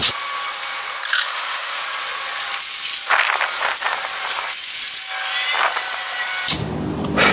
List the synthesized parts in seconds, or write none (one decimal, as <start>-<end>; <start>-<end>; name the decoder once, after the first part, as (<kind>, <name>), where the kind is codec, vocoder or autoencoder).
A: 1.1-1.8 (autoencoder, DAC-VAE)